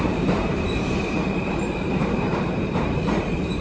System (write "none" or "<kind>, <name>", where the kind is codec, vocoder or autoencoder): vocoder, BigVGAN v2